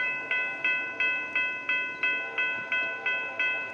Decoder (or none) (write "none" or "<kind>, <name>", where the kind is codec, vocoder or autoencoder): none